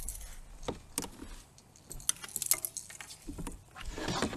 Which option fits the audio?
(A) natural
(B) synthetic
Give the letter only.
A